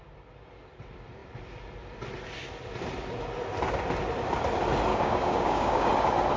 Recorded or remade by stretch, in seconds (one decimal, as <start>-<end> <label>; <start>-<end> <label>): 0.0-4.9 recorded; 4.9-5.9 remade; 5.9-6.4 recorded